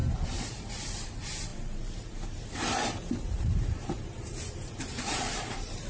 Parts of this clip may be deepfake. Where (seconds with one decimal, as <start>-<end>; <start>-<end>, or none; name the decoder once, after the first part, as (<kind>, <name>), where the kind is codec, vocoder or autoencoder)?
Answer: 0.0-5.9 (vocoder, BigVGAN v2)